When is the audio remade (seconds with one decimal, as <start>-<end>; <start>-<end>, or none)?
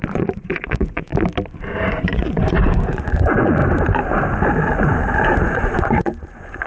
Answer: 0.0-1.1; 1.9-3.6; 4.8-6.7